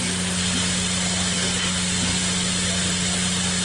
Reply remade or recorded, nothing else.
recorded